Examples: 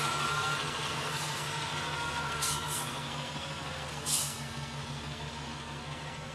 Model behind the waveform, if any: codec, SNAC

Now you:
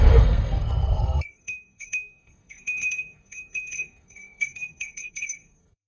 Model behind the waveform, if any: codec, SNAC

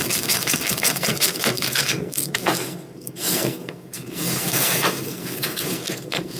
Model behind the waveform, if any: codec, SNAC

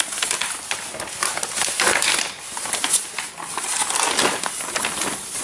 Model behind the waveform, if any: none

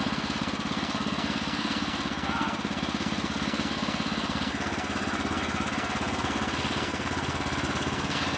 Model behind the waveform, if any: codec, SNAC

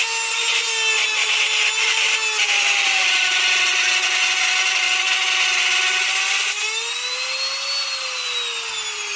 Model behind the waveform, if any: none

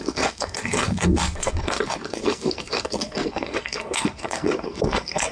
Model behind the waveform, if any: codec, SNAC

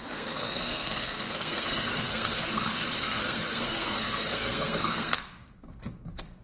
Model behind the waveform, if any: codec, SNAC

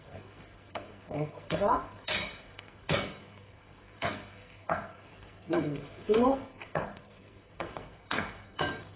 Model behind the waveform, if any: codec, SNAC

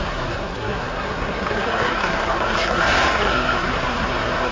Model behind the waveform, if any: codec, SNAC